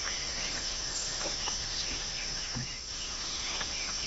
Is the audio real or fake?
fake